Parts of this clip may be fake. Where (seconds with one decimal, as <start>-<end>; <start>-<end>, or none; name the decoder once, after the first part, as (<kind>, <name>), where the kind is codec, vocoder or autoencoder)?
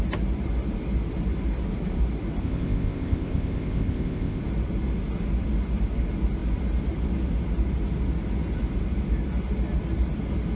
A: 2.4-4.4 (codec, ZipCodec)